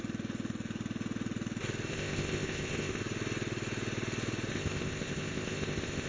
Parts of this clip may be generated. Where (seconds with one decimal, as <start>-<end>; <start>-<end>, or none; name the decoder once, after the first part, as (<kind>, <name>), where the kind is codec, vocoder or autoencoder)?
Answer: 1.9-3.0 (codec, ZipCodec); 4.5-6.1